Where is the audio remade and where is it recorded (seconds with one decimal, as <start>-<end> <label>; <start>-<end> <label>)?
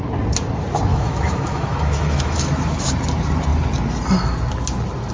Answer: 0.0-0.9 recorded; 0.9-2.9 remade; 2.9-5.1 recorded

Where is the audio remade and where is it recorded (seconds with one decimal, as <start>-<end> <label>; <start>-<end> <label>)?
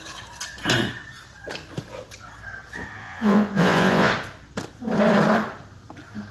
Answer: 0.0-3.0 recorded; 3.0-4.1 remade; 4.1-6.3 recorded